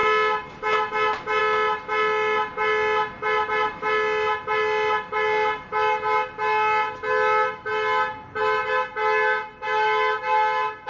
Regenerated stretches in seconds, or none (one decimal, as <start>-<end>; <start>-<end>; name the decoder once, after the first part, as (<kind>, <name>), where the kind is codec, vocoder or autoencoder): none